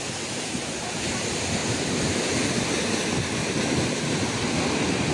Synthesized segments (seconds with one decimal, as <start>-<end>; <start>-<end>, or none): none